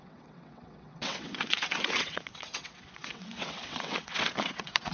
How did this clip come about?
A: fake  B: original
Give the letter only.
A